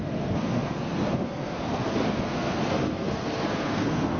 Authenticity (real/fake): fake